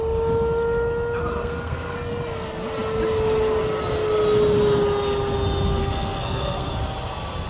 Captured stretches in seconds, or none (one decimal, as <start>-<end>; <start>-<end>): 0.0-1.2; 2.1-5.8; 6.7-7.5